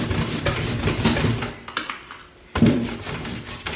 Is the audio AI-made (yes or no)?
no